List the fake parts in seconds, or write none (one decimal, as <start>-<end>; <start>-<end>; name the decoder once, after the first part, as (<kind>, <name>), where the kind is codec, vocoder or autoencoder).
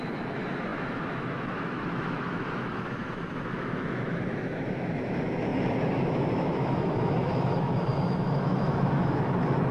0.0-9.7 (autoencoder, DAC-VAE)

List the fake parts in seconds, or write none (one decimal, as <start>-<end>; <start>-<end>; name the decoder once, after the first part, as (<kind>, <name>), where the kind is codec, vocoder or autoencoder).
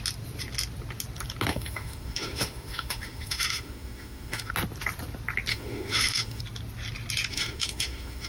1.5-4.5 (autoencoder, DAC-VAE); 5.5-6.4; 7.3-8.3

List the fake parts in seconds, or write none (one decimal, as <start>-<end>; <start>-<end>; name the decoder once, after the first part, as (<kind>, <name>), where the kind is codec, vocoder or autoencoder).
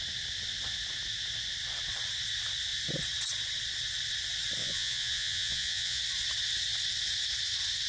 4.6-6.0 (vocoder, Vocos)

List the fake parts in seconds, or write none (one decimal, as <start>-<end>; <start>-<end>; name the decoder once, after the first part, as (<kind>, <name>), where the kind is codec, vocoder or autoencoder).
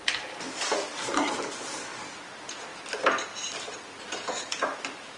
0.9-2.2 (vocoder, BigVGAN v2)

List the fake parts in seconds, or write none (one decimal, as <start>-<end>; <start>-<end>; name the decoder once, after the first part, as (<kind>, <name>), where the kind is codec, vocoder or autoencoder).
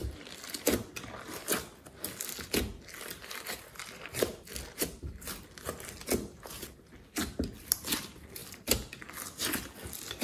0.0-0.9 (vocoder, BigVGAN v2); 8.4-9.2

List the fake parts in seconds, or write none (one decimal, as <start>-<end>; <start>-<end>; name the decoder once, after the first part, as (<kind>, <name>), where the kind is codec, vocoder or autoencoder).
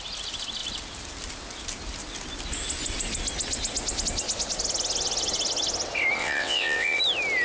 6.2-7.0 (vocoder, WaveNeXt)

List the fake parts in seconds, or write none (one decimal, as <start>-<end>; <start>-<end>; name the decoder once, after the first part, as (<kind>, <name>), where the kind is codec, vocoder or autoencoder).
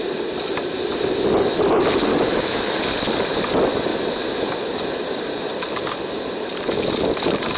2.1-2.8 (autoencoder, DAC-VAE)